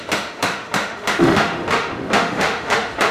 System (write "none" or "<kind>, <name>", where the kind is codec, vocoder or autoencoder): autoencoder, DAC-VAE